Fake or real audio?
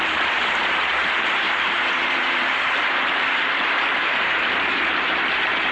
fake